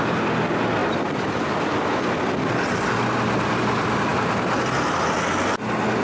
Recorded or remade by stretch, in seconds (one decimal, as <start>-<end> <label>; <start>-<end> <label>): 0.0-6.0 recorded